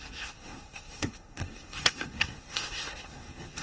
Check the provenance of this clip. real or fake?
fake